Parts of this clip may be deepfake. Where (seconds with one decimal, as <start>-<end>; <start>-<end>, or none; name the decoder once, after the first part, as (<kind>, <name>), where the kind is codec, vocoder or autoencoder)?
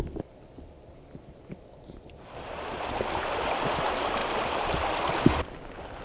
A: none